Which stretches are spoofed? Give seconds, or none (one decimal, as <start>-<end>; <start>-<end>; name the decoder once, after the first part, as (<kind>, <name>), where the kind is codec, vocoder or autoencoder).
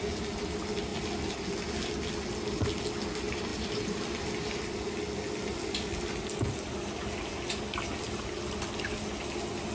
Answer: none